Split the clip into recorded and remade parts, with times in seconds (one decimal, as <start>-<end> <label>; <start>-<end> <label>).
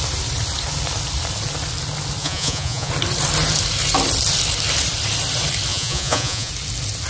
0.0-2.2 recorded; 2.2-2.9 remade; 2.9-5.7 recorded; 5.7-6.5 remade; 6.5-7.1 recorded